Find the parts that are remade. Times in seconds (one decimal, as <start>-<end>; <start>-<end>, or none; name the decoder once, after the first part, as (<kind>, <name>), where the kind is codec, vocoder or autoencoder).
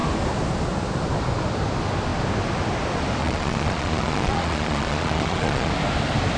3.2-5.7 (vocoder, Vocos)